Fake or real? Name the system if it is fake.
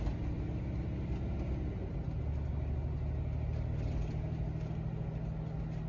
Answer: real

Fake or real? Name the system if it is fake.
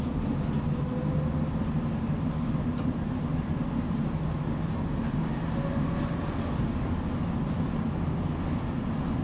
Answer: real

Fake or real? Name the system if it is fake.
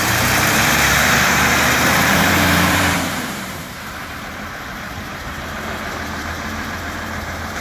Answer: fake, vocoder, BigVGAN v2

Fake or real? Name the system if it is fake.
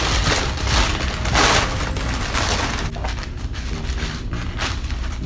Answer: real